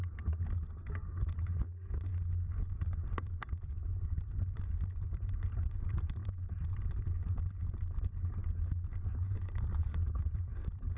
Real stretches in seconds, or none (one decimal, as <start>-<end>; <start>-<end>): 2.1-2.6; 8.4-9.1